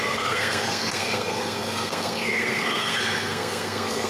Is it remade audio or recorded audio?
remade